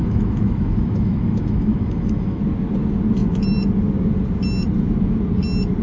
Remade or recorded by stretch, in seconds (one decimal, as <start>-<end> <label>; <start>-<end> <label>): 0.0-2.4 remade; 2.4-5.8 recorded